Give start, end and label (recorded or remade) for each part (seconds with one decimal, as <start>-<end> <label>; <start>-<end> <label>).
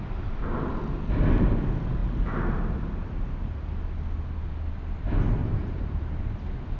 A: 0.0-2.0 recorded; 2.0-3.8 remade; 3.8-5.4 recorded; 5.4-6.3 remade; 6.3-6.8 recorded